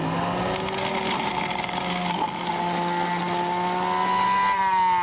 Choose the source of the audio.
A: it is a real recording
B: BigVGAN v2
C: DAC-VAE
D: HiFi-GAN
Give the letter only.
A